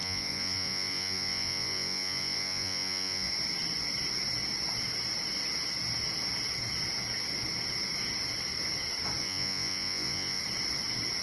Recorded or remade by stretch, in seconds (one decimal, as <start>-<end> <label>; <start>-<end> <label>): 0.0-3.3 remade; 3.3-9.2 recorded; 9.2-10.4 remade; 10.4-11.2 recorded